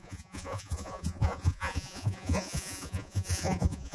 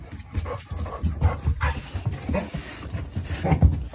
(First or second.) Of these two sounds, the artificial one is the first